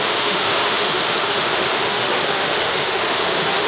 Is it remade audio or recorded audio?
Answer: remade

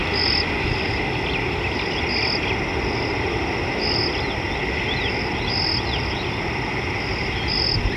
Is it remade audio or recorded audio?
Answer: recorded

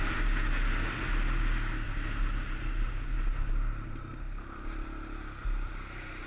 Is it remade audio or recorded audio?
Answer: recorded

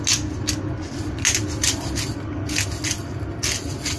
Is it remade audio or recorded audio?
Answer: recorded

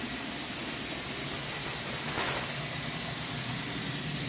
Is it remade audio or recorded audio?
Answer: recorded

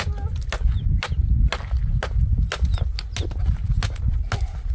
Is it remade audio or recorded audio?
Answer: recorded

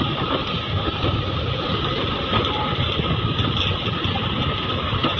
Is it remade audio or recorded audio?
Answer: recorded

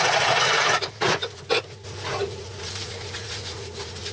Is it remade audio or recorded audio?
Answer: remade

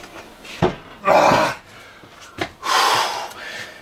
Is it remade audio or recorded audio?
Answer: recorded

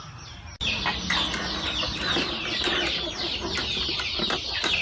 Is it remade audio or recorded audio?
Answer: recorded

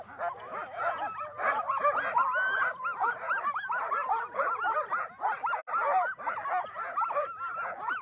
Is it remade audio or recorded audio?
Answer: recorded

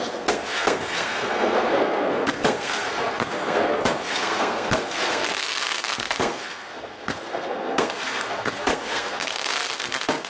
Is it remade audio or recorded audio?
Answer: remade